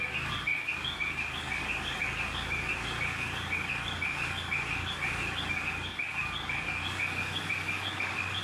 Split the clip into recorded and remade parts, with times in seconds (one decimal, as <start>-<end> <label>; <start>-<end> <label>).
0.0-8.4 remade